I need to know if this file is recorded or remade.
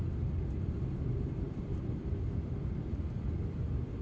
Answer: remade